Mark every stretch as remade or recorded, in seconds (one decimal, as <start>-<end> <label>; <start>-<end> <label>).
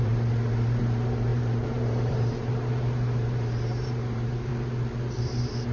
0.0-4.5 remade; 4.5-5.2 recorded; 5.2-5.7 remade